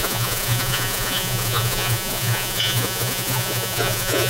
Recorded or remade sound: remade